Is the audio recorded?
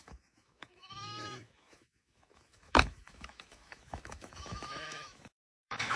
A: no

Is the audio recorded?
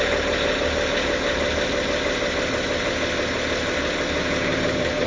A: yes